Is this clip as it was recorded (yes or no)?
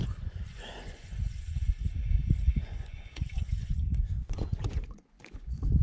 no